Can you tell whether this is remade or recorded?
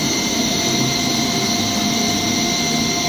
recorded